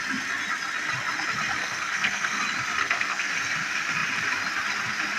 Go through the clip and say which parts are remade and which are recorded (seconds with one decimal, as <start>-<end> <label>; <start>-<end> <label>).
0.0-1.6 recorded; 1.6-2.4 remade; 2.4-2.8 recorded; 2.8-3.3 remade; 3.3-5.2 recorded